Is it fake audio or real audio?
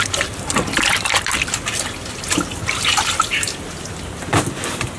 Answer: real